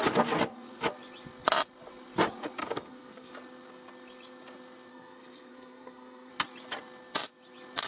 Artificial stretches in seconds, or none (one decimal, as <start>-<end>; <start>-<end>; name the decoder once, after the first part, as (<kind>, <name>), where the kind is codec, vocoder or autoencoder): 2.6-3.3 (codec, SNAC); 4.9-6.3